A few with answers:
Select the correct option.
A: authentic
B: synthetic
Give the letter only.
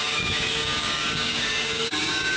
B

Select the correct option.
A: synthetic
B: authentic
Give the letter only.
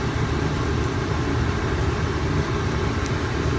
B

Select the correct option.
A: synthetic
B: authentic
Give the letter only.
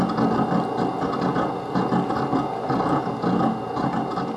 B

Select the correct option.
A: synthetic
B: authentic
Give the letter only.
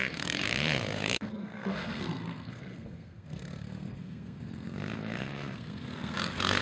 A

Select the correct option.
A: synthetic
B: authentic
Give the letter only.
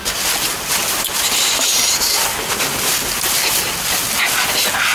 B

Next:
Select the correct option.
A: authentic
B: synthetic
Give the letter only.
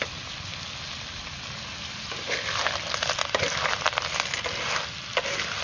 A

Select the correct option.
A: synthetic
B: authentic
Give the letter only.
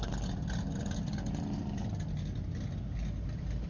B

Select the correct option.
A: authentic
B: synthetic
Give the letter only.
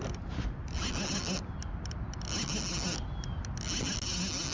A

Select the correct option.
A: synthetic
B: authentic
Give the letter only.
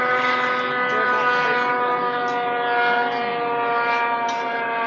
B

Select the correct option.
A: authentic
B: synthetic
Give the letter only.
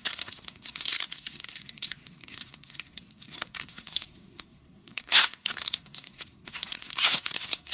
B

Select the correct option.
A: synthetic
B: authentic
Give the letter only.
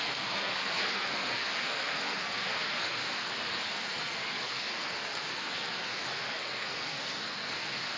A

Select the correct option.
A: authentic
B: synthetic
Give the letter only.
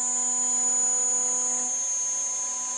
A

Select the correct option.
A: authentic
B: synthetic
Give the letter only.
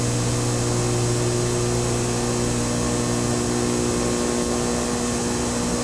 A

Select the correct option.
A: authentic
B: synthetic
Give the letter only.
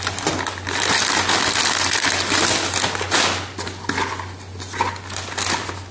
A